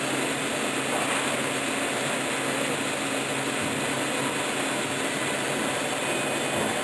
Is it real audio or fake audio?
real